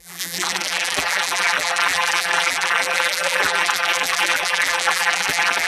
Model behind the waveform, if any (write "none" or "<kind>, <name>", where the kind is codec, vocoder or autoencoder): vocoder, BigVGAN v2